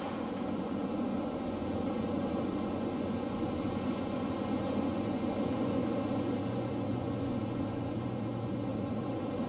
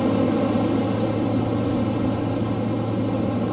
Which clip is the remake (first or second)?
first